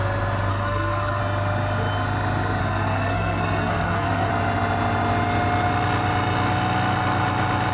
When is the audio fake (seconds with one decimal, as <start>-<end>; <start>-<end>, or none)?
0.5-1.2; 2.6-4.3